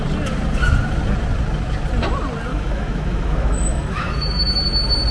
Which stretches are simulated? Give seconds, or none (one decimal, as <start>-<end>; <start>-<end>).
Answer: 2.5-4.6